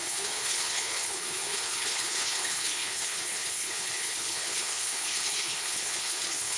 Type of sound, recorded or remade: remade